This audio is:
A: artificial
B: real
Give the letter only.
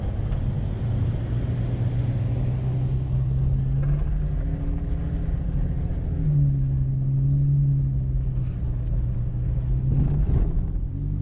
B